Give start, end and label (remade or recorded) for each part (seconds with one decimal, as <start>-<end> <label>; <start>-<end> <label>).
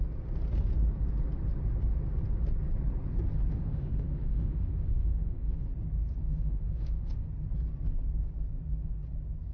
0.0-3.5 recorded; 3.5-5.7 remade; 5.7-6.2 recorded; 6.2-7.3 remade; 7.3-9.5 recorded